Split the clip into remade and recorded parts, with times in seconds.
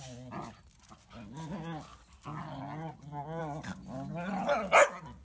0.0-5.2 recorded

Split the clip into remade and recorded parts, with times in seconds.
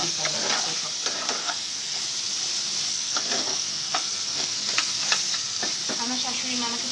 0.0-0.5 remade; 0.5-1.4 recorded; 1.4-2.0 remade; 2.0-2.9 recorded; 2.9-5.6 remade; 5.6-6.9 recorded